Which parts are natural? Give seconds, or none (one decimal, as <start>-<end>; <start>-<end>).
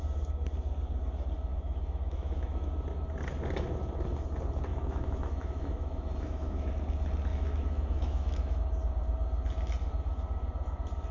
0.0-1.5; 2.7-4.7; 6.7-7.3; 8.6-11.1